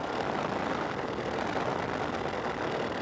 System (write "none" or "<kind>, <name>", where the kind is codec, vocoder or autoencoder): none